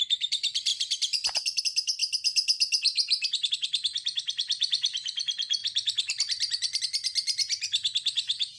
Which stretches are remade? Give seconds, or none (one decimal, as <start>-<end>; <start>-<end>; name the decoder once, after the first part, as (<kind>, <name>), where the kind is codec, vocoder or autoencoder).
0.7-1.6 (vocoder, BigVGAN v2); 5.6-6.8